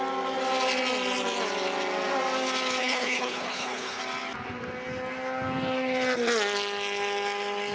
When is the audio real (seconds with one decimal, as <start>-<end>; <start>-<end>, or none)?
0.0-2.8; 4.0-7.7